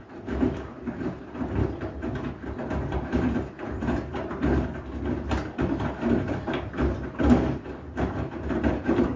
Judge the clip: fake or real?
real